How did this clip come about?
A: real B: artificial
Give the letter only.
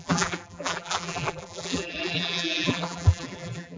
B